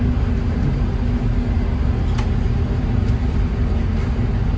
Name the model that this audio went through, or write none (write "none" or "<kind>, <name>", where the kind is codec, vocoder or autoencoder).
none